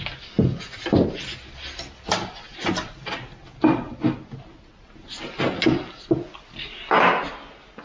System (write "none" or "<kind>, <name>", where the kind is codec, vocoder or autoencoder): none